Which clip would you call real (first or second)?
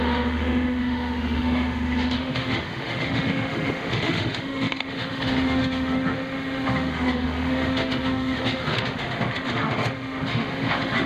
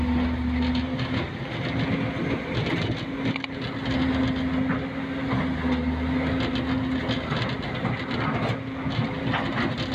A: second